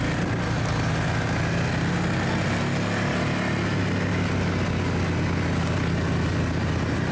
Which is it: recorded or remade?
recorded